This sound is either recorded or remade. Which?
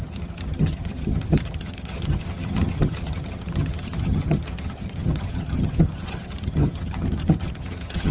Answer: remade